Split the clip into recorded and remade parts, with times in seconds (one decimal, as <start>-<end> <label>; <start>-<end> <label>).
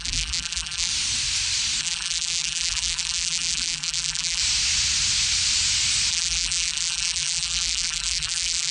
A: 0.0-0.9 remade; 0.9-1.8 recorded; 1.8-4.4 remade; 4.4-6.1 recorded; 6.1-8.7 remade